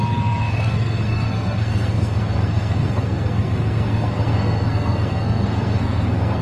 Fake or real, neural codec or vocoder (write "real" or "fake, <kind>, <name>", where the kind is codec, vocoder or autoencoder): fake, codec, SNAC